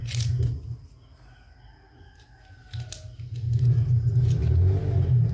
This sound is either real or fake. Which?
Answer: real